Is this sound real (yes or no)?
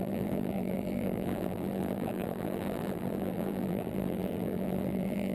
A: no